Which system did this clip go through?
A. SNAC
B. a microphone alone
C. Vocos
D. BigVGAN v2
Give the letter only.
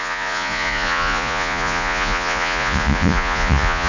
C